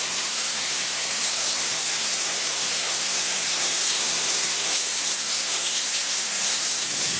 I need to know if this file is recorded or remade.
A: remade